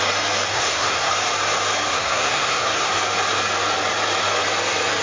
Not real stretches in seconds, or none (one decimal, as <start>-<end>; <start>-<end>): 0.5-1.1; 1.9-2.9